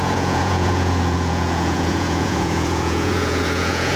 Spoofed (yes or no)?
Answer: yes